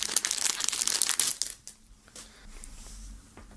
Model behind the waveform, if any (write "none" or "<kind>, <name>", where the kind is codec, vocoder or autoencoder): none